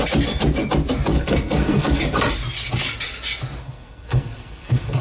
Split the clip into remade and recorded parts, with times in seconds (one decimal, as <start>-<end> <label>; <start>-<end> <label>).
0.0-1.1 recorded; 1.1-2.0 remade; 2.0-3.6 recorded; 3.6-5.0 remade